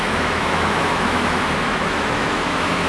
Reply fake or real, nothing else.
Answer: fake